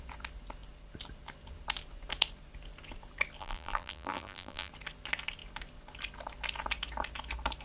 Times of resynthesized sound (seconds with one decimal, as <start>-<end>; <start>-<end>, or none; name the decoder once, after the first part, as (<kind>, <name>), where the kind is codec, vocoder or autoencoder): 3.4-4.7 (vocoder, BigVGAN v2)